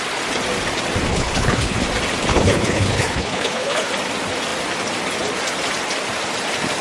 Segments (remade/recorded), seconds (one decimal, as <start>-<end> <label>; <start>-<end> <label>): 0.0-1.1 recorded; 1.1-1.8 remade; 1.8-2.3 recorded; 2.3-3.9 remade; 3.9-6.8 recorded

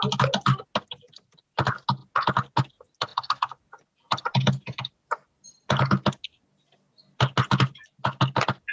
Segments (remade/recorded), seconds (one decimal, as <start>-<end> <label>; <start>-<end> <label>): 0.0-3.1 recorded; 3.1-5.4 remade; 5.4-8.7 recorded

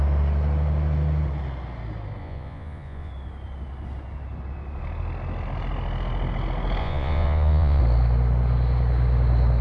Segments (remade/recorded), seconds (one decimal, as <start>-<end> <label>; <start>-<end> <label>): 0.0-2.2 recorded; 2.2-3.1 remade; 3.1-6.8 recorded; 6.8-7.8 remade; 7.8-9.6 recorded

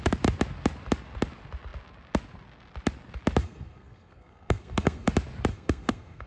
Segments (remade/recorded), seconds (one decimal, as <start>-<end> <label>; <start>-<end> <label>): 0.0-3.4 recorded; 3.4-5.1 remade; 5.1-5.5 recorded; 5.5-6.3 remade

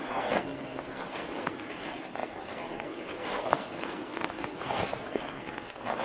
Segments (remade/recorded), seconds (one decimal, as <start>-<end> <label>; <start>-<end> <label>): 0.0-6.0 remade